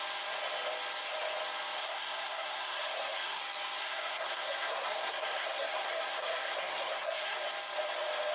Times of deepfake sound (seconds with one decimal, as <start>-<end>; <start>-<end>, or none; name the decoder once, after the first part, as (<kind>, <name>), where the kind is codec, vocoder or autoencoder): 1.8-3.4 (codec, SNAC); 3.8-7.4